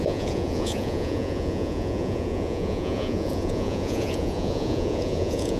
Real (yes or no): no